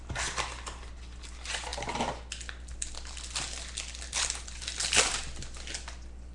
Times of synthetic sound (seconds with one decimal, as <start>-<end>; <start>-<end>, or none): none